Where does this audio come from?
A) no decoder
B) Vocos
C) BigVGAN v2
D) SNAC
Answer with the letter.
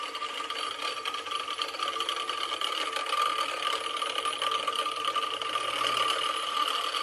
A